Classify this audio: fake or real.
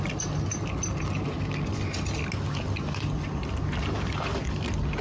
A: real